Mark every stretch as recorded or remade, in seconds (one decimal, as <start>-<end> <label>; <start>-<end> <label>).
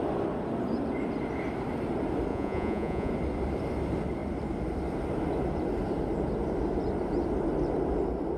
0.0-2.3 recorded; 2.3-3.1 remade; 3.1-8.4 recorded